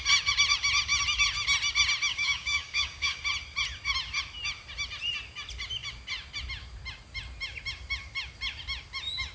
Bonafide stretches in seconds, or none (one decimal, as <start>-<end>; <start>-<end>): 0.0-2.1; 3.2-9.3